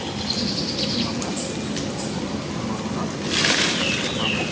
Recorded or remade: recorded